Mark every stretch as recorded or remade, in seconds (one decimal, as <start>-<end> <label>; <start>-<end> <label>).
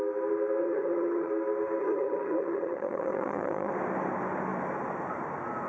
0.0-0.6 recorded; 0.6-1.3 remade; 1.3-1.8 recorded; 1.8-3.7 remade; 3.7-5.7 recorded